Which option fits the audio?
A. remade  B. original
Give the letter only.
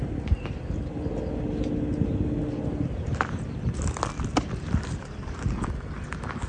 B